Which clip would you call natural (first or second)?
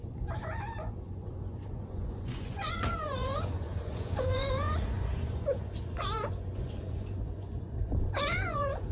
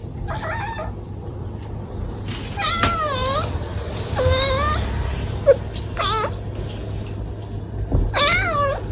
second